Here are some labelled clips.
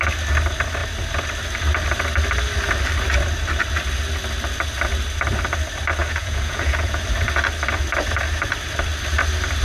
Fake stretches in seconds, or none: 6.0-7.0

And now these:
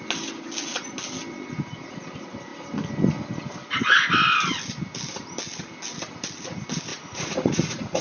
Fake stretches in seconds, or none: 6.9-8.0